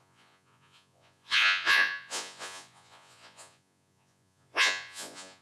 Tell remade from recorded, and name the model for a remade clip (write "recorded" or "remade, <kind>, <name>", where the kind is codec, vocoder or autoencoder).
remade, vocoder, Vocos